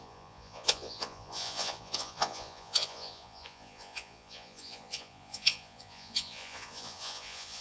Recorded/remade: remade